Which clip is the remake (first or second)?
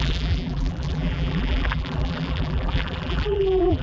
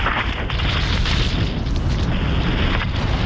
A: first